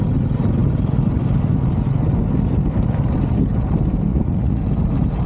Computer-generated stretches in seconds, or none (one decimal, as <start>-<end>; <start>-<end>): 4.1-4.6